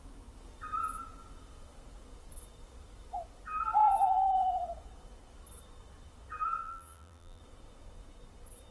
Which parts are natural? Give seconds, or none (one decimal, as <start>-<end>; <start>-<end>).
0.0-6.6; 7.4-8.7